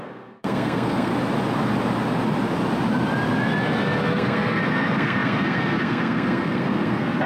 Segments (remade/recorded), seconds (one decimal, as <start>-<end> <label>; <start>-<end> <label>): 0.0-1.1 remade; 1.1-4.1 recorded; 4.1-7.3 remade